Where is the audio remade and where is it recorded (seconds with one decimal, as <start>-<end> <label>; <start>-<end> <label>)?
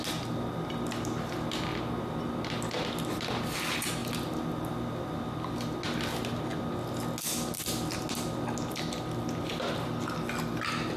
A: 0.0-11.0 recorded